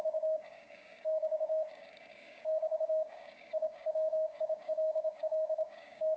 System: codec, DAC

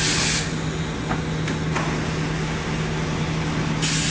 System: none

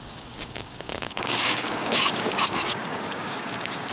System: codec, DAC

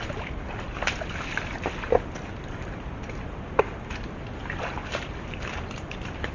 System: none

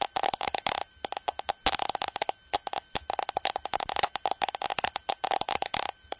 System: none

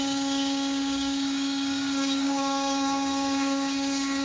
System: codec, DAC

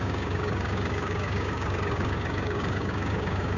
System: codec, DAC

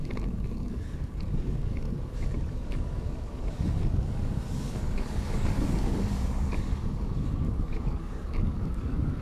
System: codec, DAC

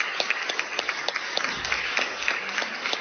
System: codec, DAC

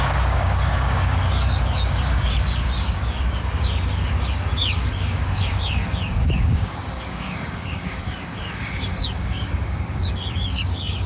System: codec, DAC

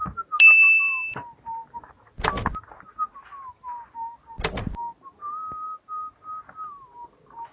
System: none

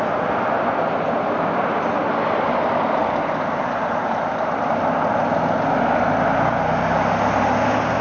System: none